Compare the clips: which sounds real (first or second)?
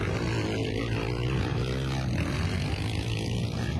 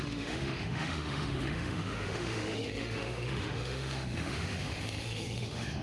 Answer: first